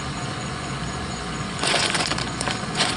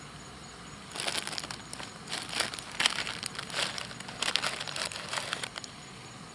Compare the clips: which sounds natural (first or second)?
second